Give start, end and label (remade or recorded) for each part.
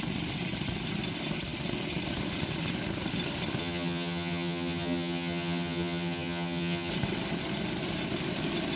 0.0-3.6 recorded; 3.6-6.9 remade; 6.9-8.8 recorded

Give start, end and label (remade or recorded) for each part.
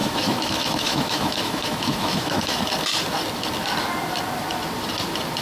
0.0-2.6 remade; 2.6-5.4 recorded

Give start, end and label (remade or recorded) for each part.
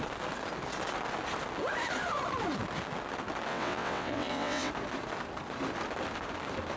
0.0-3.5 recorded; 3.5-4.7 remade; 4.7-6.8 recorded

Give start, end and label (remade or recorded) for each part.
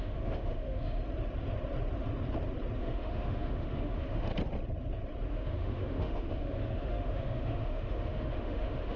0.0-1.0 remade; 1.0-2.8 recorded; 2.8-4.3 remade; 4.3-5.3 recorded; 5.3-9.0 remade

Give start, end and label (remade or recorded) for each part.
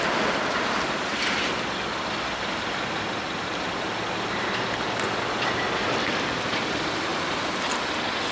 0.0-8.3 recorded